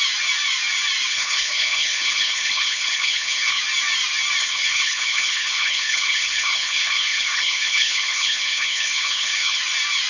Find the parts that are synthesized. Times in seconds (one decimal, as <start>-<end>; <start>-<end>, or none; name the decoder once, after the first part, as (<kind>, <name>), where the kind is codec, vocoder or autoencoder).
1.1-3.6 (codec, HILCodec); 4.4-9.6